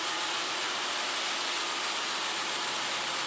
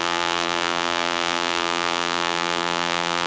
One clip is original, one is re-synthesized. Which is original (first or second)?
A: first